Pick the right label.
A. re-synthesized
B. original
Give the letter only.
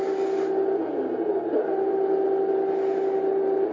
B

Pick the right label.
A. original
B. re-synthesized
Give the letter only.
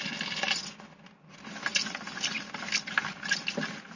A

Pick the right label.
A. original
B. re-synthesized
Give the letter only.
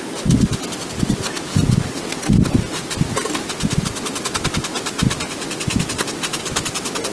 A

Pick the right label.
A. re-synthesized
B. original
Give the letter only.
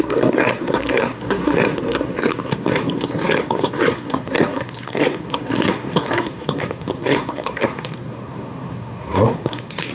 A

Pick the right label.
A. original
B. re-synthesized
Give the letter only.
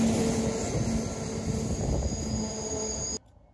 A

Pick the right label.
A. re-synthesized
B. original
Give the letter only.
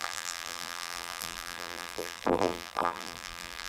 A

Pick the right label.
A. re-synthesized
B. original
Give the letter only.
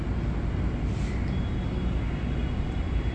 B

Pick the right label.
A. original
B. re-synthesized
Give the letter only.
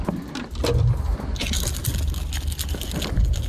A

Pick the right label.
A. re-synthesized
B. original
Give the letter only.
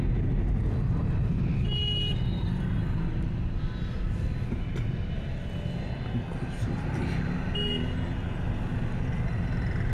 B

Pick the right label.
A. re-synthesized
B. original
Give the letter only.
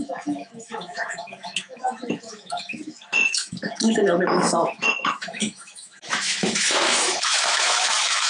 A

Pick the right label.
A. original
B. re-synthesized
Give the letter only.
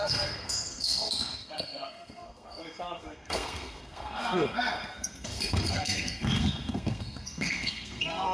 B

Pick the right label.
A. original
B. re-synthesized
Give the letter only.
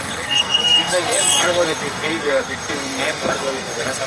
B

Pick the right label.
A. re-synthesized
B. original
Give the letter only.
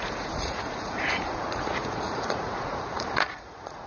A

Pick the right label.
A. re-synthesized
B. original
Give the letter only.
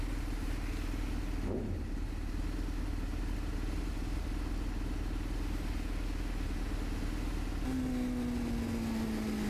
B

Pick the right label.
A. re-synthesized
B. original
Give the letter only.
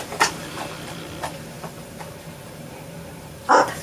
A